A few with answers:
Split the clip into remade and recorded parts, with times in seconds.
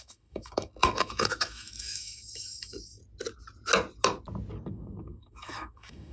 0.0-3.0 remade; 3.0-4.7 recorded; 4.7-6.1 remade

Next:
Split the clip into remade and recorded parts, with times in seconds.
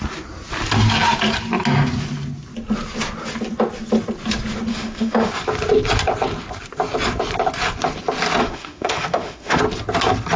0.0-4.7 recorded; 4.7-5.3 remade; 5.3-8.4 recorded; 8.4-9.6 remade; 9.6-10.4 recorded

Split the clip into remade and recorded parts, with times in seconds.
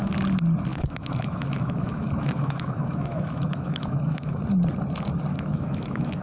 0.0-0.7 recorded; 0.7-4.4 remade; 4.4-5.3 recorded; 5.3-6.2 remade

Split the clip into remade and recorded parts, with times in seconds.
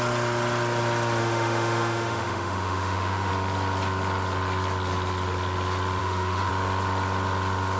0.0-1.2 recorded; 1.2-3.3 remade; 3.3-6.0 recorded; 6.0-6.5 remade; 6.5-7.8 recorded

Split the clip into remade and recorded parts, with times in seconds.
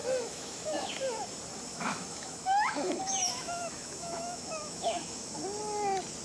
0.0-0.9 remade; 0.9-1.7 recorded; 1.7-5.4 remade; 5.4-6.2 recorded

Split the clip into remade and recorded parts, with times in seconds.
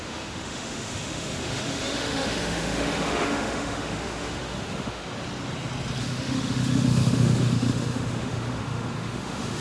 0.0-5.0 remade; 5.0-6.0 recorded; 6.0-9.6 remade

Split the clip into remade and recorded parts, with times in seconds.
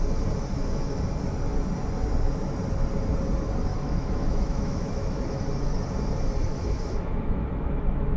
0.0-3.7 recorded; 3.7-5.4 remade; 5.4-6.5 recorded; 6.5-8.2 remade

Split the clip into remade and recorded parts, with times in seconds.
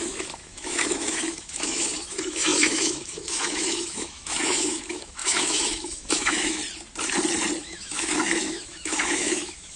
0.0-6.6 remade; 6.6-7.6 recorded; 7.6-9.8 remade